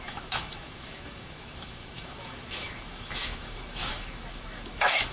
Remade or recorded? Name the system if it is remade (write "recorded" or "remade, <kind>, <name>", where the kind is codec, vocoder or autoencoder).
remade, autoencoder, DAC-VAE